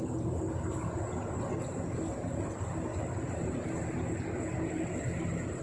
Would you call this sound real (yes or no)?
yes